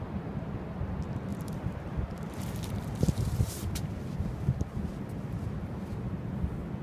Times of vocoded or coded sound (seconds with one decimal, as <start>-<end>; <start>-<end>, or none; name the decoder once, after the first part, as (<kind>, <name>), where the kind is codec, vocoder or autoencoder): 1.3-4.0 (vocoder, BigVGAN v2)

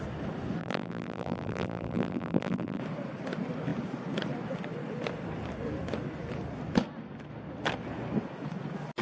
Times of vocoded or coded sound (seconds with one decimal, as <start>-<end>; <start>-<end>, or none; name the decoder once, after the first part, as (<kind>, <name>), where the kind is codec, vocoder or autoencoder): 0.6-2.8 (vocoder, BigVGAN v2)